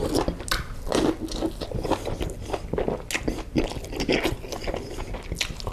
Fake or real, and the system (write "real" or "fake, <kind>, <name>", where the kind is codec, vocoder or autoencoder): real